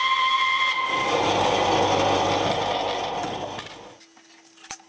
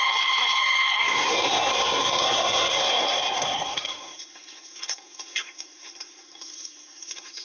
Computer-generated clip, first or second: second